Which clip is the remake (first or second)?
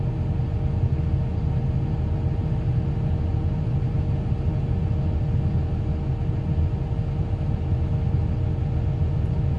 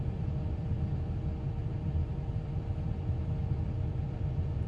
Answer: second